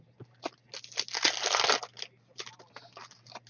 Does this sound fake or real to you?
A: real